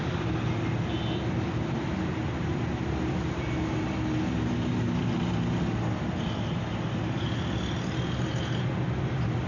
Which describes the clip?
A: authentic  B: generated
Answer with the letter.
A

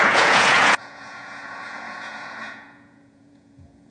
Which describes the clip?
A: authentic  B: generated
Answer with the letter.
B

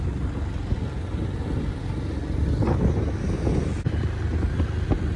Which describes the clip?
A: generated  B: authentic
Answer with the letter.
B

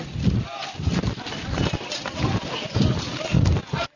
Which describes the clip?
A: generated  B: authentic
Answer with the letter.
B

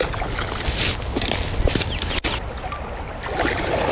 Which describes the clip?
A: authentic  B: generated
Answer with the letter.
A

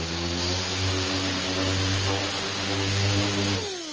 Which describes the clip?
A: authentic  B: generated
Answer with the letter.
A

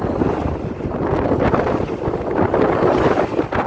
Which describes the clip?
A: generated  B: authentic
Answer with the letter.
B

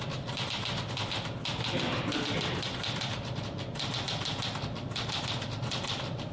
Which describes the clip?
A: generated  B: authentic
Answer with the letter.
B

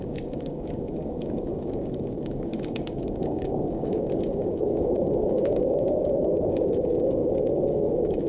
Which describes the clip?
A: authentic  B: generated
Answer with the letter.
B